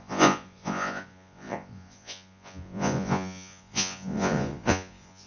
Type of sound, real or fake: fake